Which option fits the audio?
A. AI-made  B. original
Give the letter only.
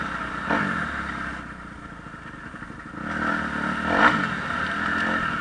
B